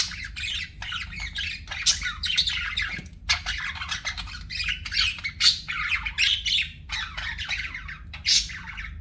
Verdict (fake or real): real